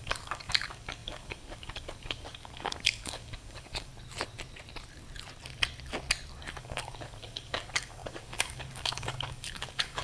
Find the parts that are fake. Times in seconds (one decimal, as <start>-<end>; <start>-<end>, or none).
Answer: 0.0-3.9; 6.6-10.0